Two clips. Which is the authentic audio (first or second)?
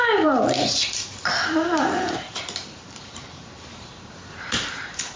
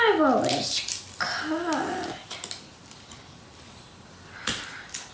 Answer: second